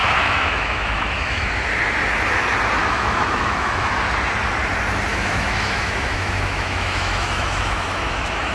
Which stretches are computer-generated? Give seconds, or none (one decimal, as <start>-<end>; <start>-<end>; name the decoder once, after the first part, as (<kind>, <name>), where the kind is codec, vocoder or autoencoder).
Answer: 0.0-1.5 (autoencoder, DAC-VAE); 2.8-3.9; 5.1-8.5